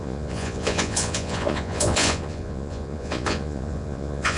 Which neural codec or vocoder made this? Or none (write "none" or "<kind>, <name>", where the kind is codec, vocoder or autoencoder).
vocoder, Vocos